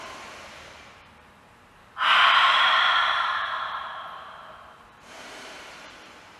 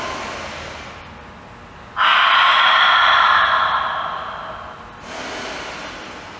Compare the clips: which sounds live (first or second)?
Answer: second